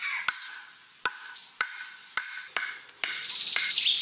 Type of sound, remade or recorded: recorded